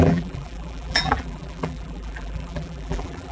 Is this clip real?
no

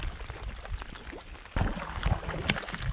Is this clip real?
yes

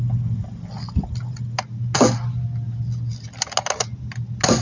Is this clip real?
yes